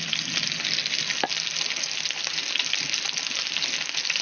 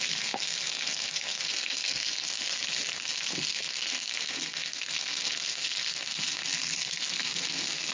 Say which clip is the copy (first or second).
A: second